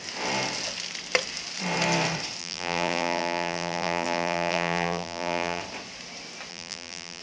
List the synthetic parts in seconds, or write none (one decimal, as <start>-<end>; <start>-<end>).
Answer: 2.4-5.6; 6.5-7.2